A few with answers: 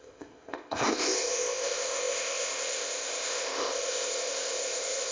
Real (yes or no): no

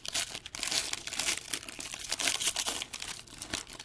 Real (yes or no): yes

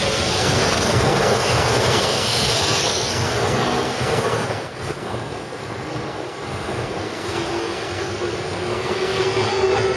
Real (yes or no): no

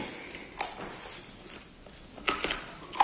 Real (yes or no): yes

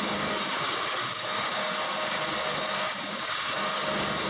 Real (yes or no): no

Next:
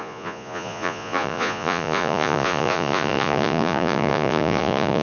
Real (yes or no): no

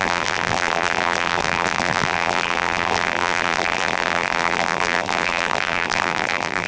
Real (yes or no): no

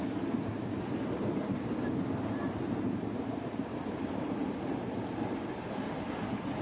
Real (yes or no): no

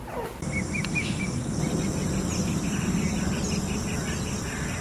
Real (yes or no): yes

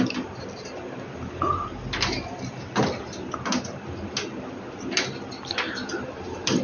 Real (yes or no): yes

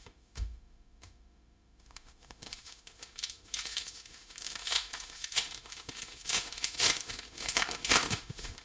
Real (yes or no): no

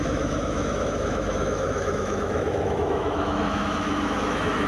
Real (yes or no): no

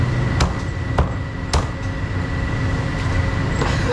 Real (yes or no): yes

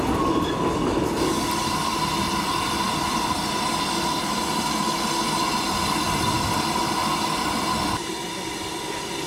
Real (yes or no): yes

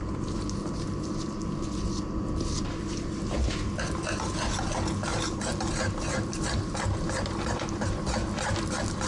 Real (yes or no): yes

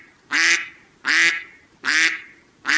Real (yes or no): yes